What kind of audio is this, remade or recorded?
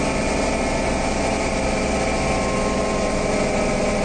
recorded